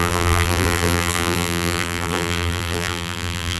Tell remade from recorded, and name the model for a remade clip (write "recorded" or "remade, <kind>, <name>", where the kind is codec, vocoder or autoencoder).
remade, vocoder, BigVGAN v2